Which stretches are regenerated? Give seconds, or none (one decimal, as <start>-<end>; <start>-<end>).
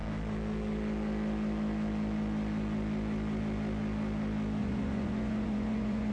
4.6-6.1